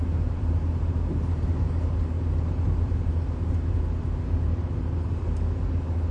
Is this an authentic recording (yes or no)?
yes